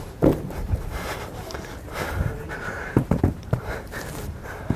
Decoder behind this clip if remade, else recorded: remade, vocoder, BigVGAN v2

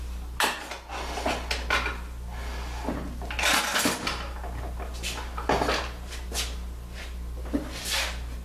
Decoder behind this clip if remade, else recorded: recorded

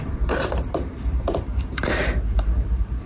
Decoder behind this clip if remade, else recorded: remade, vocoder, BigVGAN v2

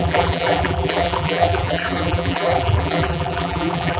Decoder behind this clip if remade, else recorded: remade, vocoder, BigVGAN v2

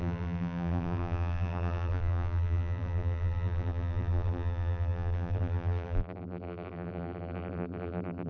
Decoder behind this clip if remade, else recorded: remade, vocoder, BigVGAN v2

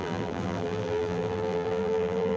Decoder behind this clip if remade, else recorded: remade, vocoder, BigVGAN v2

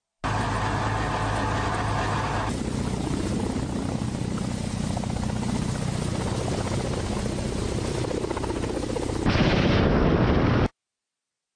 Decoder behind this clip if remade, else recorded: recorded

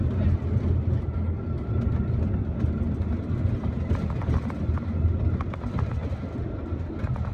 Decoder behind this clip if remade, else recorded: recorded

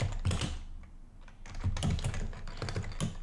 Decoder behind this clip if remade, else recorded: recorded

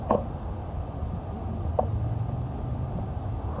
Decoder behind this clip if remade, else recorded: recorded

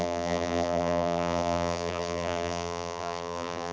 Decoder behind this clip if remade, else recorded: remade, vocoder, BigVGAN v2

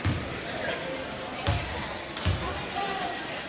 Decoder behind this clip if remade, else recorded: remade, vocoder, BigVGAN v2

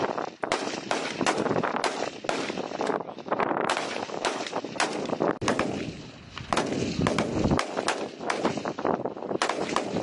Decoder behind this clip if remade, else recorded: recorded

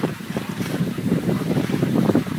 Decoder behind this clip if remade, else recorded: remade, vocoder, BigVGAN v2